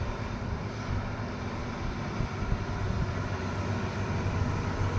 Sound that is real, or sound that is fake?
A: real